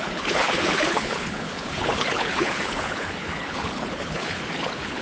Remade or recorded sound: remade